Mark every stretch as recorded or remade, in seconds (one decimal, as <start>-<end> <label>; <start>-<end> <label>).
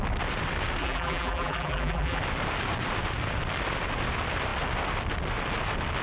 0.0-0.8 recorded; 0.8-2.2 remade; 2.2-6.0 recorded